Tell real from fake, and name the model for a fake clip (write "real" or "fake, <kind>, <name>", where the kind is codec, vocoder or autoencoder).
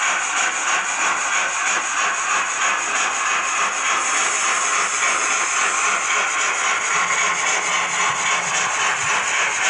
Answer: real